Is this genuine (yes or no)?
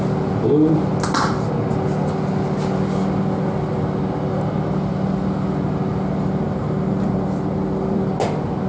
yes